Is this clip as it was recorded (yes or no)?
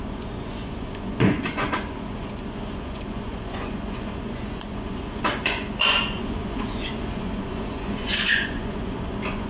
no